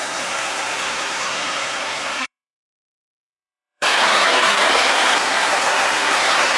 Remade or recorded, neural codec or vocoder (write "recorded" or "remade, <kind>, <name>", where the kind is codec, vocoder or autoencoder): remade, codec, SNAC